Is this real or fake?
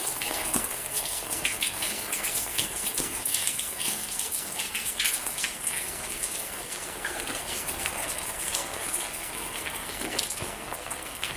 fake